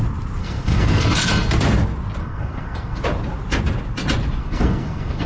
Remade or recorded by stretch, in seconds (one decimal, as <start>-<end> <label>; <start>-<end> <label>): 0.0-0.4 recorded; 0.4-1.3 remade; 1.3-2.2 recorded; 2.2-3.0 remade; 3.0-4.4 recorded; 4.4-5.3 remade